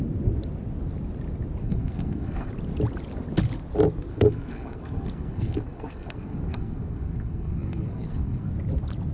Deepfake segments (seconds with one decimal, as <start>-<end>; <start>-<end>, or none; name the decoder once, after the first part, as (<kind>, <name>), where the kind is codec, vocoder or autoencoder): 1.6-2.5 (codec, SNAC); 4.1-8.5